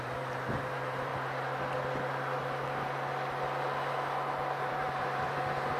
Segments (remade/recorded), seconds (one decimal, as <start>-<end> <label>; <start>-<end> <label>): 0.0-1.1 remade; 1.1-4.6 recorded; 4.6-5.8 remade